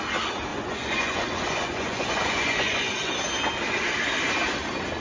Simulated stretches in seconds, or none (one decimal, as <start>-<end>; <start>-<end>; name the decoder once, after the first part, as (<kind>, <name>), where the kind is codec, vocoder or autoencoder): 0.5-3.1 (vocoder, Vocos)